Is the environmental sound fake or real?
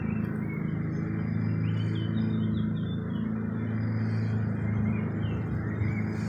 real